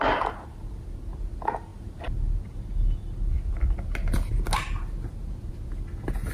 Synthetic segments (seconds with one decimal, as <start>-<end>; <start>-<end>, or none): none